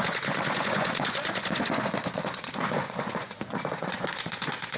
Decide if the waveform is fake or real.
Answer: fake